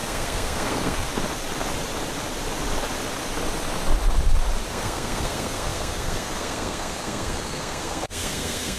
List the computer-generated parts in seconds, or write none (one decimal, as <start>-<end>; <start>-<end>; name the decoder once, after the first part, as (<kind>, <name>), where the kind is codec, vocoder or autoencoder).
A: 0.0-1.1 (codec, SNAC); 4.7-8.8